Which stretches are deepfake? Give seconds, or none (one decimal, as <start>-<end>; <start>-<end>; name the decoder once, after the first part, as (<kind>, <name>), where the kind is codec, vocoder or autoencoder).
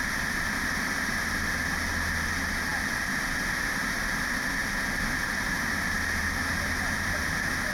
none